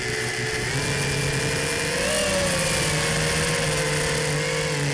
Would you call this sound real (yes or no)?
yes